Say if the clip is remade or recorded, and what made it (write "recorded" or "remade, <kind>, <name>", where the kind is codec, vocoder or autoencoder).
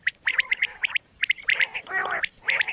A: remade, vocoder, BigVGAN v2